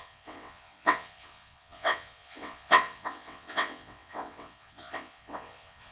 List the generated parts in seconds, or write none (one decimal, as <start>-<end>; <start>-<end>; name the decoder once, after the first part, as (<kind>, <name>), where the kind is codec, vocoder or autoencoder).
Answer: 0.0-5.9 (vocoder, WaveNeXt)